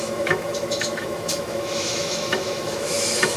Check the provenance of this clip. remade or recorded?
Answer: remade